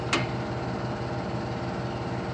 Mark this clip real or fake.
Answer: real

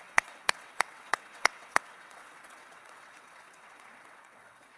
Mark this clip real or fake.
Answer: fake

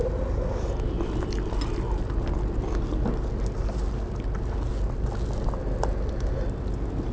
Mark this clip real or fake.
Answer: real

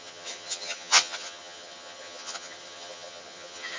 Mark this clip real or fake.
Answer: fake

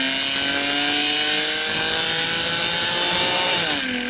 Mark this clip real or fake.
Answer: real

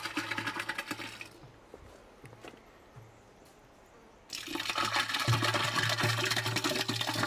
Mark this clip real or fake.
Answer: real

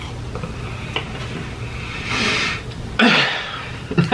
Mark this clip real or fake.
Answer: real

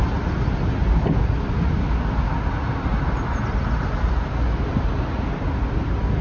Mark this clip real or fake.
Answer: real